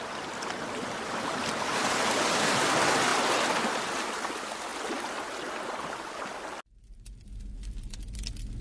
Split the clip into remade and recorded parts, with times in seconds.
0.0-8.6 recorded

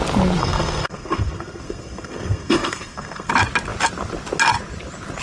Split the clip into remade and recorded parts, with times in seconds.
0.0-0.4 recorded; 0.4-3.3 remade; 3.3-5.2 recorded

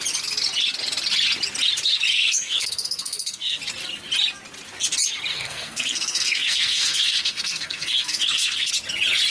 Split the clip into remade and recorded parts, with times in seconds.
0.0-2.1 recorded; 2.1-3.6 remade; 3.6-5.3 recorded; 5.3-8.7 remade; 8.7-9.3 recorded

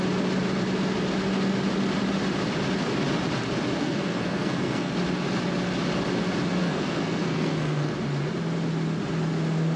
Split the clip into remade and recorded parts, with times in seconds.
0.0-3.8 recorded; 3.8-4.9 remade; 4.9-6.6 recorded; 6.6-7.9 remade; 7.9-9.8 recorded

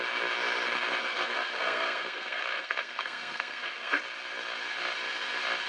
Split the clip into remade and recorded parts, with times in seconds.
0.0-1.0 recorded; 1.0-4.0 remade; 4.0-5.7 recorded

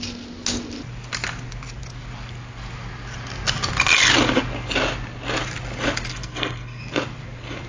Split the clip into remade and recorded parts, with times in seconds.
0.0-6.1 recorded; 6.1-6.8 remade; 6.8-7.7 recorded